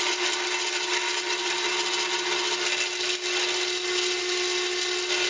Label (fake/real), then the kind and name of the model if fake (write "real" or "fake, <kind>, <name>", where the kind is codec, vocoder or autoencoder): real